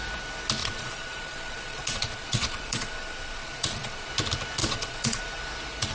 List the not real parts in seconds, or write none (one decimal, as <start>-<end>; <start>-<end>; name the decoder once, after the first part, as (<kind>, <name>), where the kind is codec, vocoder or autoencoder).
0.6-4.1 (vocoder, Vocos); 4.6-5.2